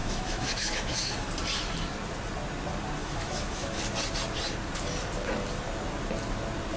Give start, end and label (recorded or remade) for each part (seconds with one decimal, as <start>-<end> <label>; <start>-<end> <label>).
0.0-1.1 remade; 1.1-3.0 recorded; 3.0-3.8 remade; 3.8-6.8 recorded